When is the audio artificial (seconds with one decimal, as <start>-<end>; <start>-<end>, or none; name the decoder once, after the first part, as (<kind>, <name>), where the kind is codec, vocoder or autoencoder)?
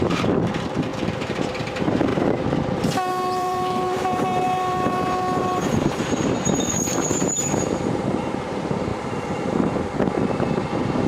0.0-2.1 (vocoder, BigVGAN v2); 3.1-11.1